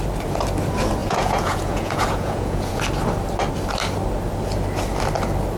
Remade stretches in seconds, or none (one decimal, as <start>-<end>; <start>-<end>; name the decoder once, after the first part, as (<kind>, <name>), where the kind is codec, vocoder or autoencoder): 1.0-2.8 (vocoder, Vocos)